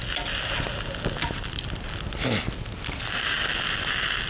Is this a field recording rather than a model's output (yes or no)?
yes